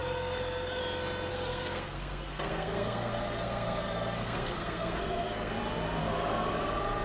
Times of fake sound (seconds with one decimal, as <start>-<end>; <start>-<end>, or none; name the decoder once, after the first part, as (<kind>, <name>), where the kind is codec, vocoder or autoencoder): 0.0-0.8 (codec, SNAC); 1.3-5.5; 6.0-6.5